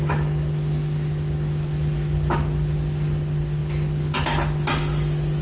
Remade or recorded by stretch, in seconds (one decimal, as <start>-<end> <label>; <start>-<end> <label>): 0.0-5.4 recorded